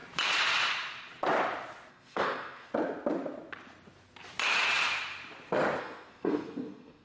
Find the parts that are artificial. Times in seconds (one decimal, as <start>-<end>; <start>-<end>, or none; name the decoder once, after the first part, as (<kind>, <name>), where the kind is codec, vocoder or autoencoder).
1.9-2.7 (codec, SNAC); 5.8-7.0